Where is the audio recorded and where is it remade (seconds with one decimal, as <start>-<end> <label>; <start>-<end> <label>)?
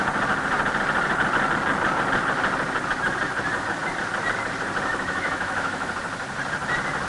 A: 0.0-4.9 recorded; 4.9-5.9 remade; 5.9-7.1 recorded